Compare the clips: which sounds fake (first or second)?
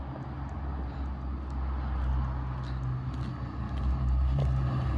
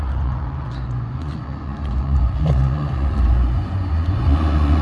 second